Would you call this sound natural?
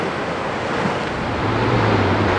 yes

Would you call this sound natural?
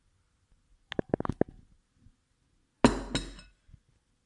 yes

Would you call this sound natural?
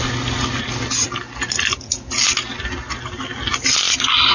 yes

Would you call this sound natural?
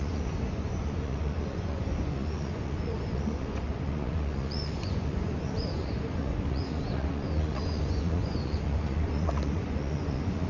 no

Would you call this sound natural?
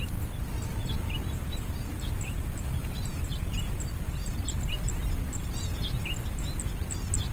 yes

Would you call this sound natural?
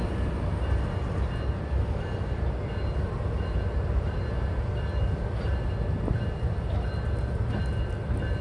yes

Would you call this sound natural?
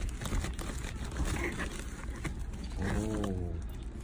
yes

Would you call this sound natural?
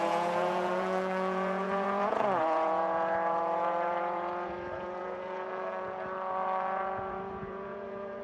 no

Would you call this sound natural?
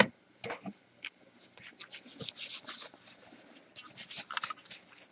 yes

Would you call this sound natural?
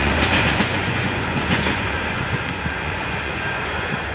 no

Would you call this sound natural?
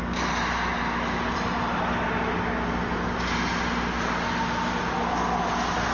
yes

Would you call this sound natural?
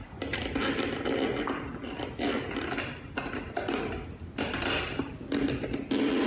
yes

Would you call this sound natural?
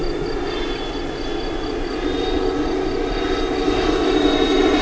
yes